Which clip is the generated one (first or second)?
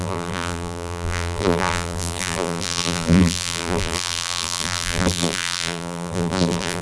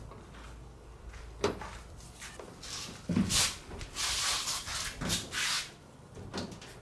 first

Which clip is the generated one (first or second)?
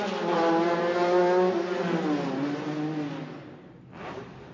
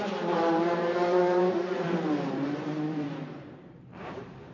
second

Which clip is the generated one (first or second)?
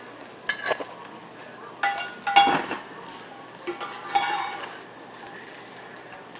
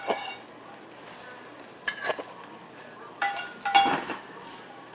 second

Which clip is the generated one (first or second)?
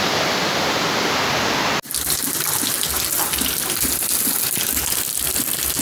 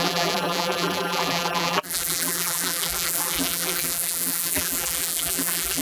second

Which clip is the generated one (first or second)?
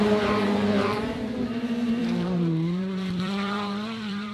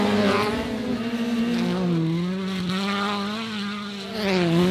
first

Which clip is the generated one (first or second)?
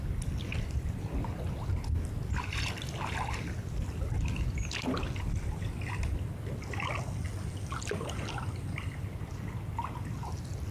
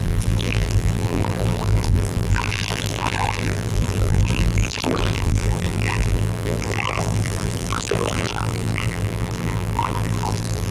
second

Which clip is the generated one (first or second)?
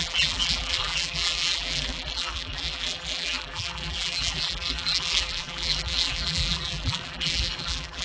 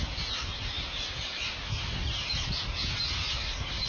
first